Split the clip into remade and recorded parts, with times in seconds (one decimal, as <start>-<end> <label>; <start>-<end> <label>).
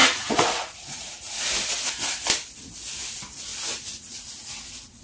0.0-1.4 remade; 1.4-3.5 recorded; 3.5-4.6 remade; 4.6-5.0 recorded